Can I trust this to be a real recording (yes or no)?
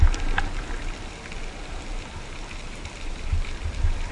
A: yes